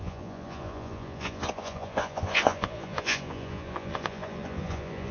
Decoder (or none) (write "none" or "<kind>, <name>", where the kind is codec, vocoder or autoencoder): vocoder, Vocos